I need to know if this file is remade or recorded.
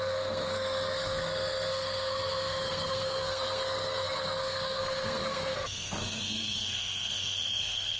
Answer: remade